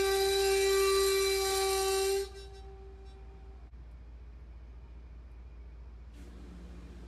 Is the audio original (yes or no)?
yes